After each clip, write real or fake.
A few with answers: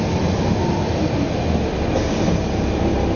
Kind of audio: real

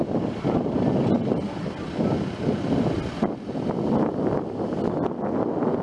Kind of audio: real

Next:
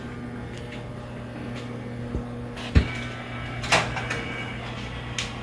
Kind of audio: real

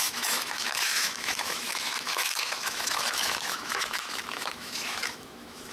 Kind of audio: fake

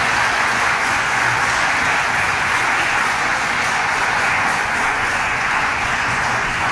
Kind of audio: fake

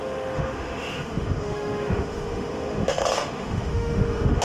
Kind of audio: fake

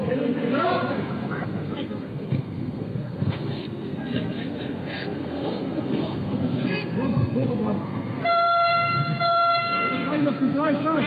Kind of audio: fake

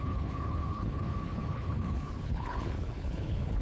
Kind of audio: fake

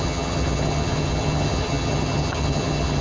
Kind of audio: fake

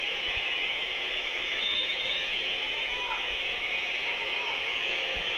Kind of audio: fake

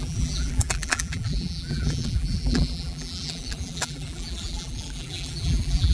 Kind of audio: fake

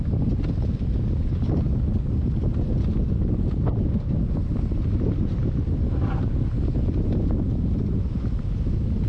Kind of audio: real